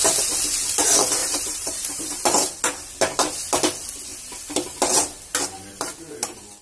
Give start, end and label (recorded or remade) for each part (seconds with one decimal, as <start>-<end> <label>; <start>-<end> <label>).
0.0-1.2 recorded; 1.2-2.6 remade; 2.6-6.6 recorded